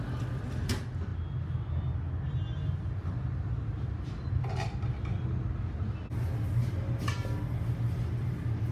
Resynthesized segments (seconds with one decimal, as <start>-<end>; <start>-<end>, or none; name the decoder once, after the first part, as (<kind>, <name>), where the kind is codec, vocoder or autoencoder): none